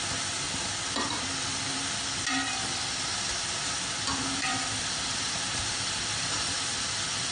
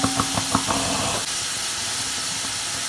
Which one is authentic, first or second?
second